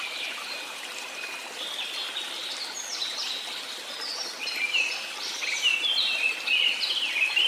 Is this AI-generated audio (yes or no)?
no